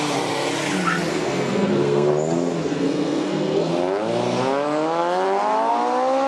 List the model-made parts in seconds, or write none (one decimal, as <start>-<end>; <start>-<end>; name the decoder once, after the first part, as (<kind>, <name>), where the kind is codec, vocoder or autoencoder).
1.1-2.1 (codec, SNAC); 2.6-3.7